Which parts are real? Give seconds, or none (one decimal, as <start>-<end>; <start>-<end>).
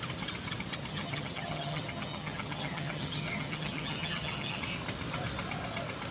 0.0-0.9; 4.6-6.1